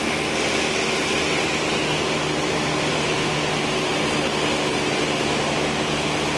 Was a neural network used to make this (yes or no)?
no